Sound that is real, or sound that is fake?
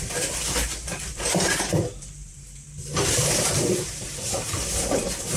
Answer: real